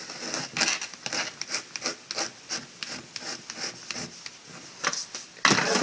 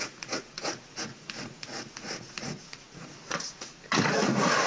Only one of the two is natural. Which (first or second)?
first